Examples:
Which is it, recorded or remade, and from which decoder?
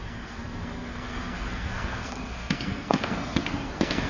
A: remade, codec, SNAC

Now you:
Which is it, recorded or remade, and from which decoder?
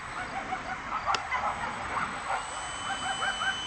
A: recorded